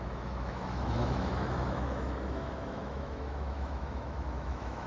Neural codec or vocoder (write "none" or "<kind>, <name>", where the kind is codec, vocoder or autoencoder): autoencoder, DAC-VAE